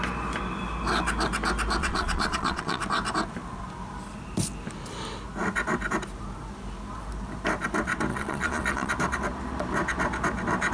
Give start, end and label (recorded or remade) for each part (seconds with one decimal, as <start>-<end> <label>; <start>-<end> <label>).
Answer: 0.0-1.8 recorded; 1.8-2.8 remade; 2.8-8.1 recorded; 8.1-8.9 remade; 8.9-10.7 recorded